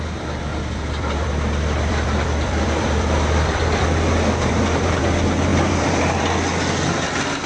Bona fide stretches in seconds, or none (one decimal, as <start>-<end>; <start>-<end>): 0.0-0.5; 5.0-5.5; 6.2-7.5